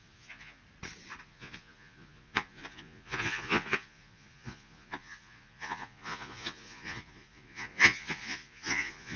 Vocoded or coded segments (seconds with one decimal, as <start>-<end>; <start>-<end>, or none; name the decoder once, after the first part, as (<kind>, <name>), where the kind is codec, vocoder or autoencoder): 0.0-0.6 (vocoder, Vocos); 1.2-9.2